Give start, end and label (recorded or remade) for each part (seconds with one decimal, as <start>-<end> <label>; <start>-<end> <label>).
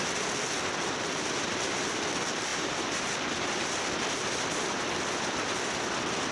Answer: 0.0-2.5 recorded; 2.5-3.5 remade; 3.5-6.3 recorded